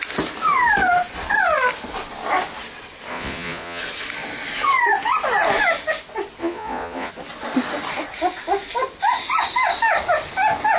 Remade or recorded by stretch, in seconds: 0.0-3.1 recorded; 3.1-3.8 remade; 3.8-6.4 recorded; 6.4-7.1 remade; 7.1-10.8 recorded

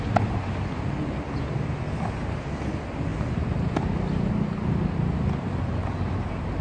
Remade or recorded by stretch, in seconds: 0.0-6.6 recorded

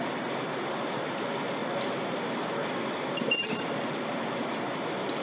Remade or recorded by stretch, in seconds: 0.0-1.6 recorded; 1.6-3.9 remade; 3.9-5.2 recorded